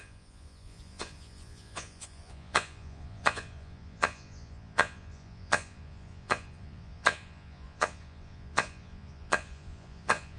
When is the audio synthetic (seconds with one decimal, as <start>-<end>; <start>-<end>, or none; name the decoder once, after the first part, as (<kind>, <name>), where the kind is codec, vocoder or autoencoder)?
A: 0.0-10.4 (vocoder, Vocos)